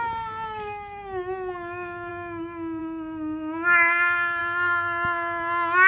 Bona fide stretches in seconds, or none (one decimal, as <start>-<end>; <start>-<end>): 0.0-5.9

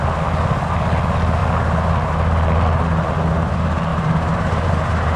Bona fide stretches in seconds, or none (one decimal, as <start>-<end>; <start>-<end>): 0.0-3.9; 4.7-5.2